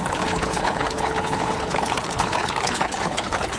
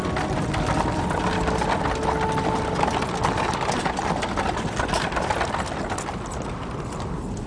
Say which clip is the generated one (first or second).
first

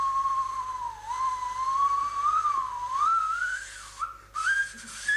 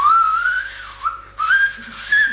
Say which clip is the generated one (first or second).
first